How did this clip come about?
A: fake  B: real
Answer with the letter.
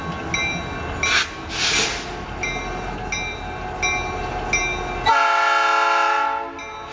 B